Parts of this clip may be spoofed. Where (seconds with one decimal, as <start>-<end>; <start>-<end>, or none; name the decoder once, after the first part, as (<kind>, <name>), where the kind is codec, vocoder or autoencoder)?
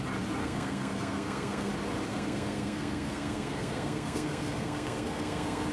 0.4-1.7 (codec, SNAC); 2.1-5.7